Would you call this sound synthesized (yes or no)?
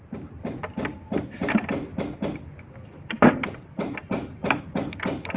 yes